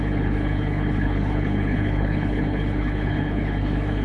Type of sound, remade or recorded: remade